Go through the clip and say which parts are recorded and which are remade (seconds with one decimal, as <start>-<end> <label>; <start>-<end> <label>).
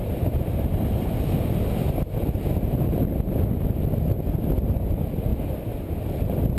0.0-1.8 remade; 1.8-4.4 recorded; 4.4-6.6 remade